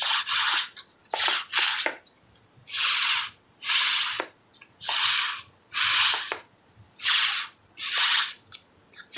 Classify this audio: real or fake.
fake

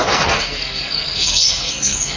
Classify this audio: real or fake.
fake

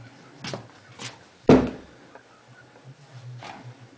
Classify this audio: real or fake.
real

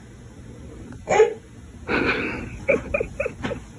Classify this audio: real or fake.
real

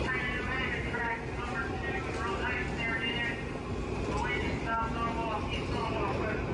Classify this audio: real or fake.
real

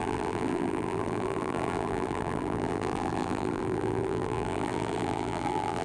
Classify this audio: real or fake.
fake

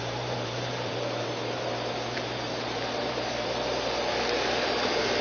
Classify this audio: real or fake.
fake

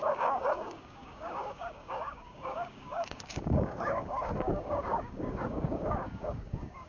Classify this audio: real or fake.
fake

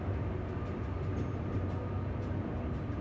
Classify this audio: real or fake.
real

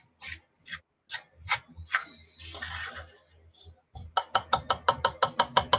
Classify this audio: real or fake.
real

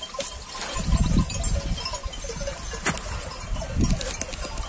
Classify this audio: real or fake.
real